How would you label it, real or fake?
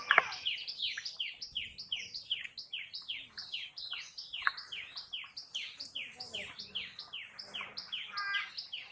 real